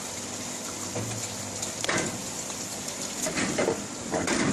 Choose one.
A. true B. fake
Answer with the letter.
B